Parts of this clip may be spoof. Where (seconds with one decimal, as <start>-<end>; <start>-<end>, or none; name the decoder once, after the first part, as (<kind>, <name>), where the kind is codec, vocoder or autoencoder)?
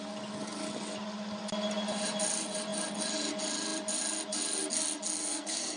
5.2-5.8 (codec, SNAC)